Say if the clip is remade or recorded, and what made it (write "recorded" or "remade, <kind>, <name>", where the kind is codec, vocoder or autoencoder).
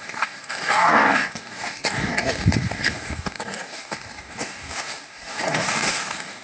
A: remade, codec, DAC